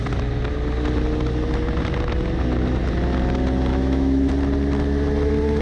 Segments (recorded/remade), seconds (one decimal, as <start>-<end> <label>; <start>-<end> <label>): 0.0-3.7 recorded; 3.7-4.3 remade; 4.3-5.6 recorded